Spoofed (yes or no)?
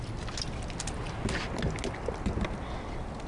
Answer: no